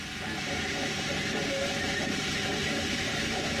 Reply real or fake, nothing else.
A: real